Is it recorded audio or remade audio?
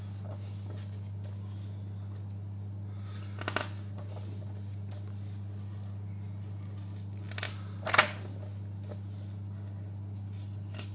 recorded